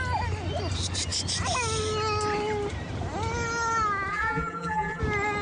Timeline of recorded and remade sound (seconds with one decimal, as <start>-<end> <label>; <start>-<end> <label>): 0.0-4.1 recorded; 4.1-5.0 remade; 5.0-5.4 recorded